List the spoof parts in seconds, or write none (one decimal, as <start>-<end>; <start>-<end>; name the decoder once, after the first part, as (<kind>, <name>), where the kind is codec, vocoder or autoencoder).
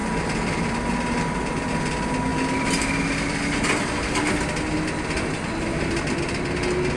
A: none